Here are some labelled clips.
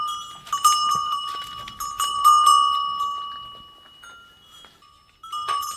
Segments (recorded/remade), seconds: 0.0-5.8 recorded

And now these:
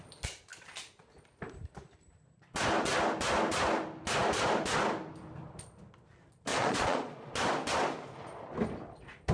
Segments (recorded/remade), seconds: 0.0-6.5 recorded; 6.5-7.3 remade; 7.3-9.3 recorded

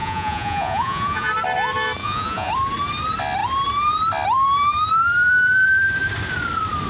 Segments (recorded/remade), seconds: 0.0-1.3 remade; 1.3-2.0 recorded; 2.0-2.5 remade; 2.5-6.9 recorded

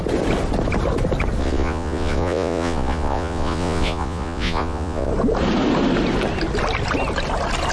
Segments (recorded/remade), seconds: 0.0-1.4 recorded; 1.4-5.1 remade; 5.1-7.7 recorded